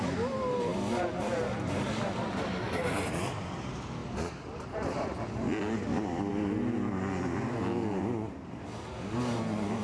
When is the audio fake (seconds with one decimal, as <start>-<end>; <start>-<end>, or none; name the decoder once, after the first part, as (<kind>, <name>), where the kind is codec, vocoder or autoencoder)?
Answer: 0.0-6.3 (vocoder, BigVGAN v2); 7.5-9.8